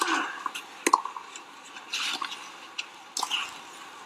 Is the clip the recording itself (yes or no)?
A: yes